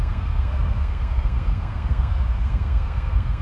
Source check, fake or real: fake